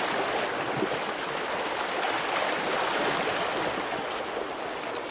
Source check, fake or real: real